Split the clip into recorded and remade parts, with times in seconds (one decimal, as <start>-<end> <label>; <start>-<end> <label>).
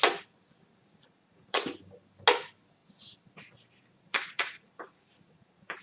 0.0-0.8 recorded; 0.8-1.6 remade; 1.6-3.9 recorded; 3.9-5.8 remade